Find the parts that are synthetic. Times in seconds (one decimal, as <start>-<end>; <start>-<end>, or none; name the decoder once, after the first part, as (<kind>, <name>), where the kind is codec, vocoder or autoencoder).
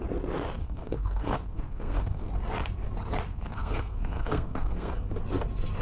0.6-2.3 (codec, SNAC); 3.3-5.1